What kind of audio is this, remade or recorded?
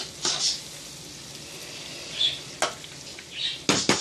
recorded